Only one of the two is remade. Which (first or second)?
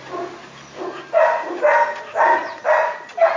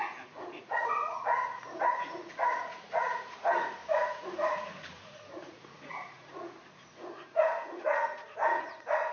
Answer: second